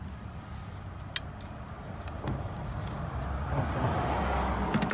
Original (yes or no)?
yes